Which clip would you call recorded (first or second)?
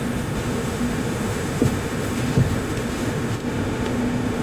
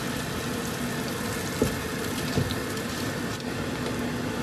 second